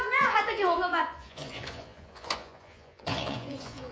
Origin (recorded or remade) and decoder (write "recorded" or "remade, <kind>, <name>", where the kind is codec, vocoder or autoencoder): remade, vocoder, Vocos